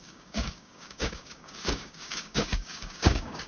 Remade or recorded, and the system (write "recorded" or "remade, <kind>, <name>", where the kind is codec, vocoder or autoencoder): remade, codec, DAC